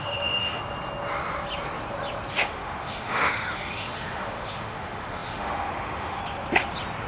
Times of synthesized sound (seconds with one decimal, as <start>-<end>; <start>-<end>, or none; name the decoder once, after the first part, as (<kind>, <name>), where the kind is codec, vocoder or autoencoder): 0.0-0.6 (autoencoder, DAC-VAE); 2.3-6.2